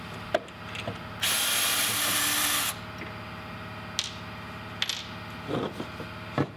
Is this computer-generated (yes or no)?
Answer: no